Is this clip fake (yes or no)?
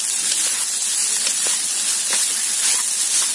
no